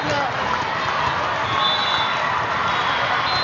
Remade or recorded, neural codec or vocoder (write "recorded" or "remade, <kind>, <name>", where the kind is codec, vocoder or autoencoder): recorded